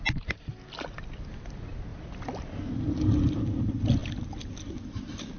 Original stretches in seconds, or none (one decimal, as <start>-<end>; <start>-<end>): 0.0-5.4